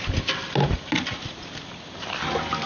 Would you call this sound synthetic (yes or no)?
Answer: no